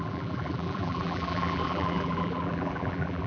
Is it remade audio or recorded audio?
remade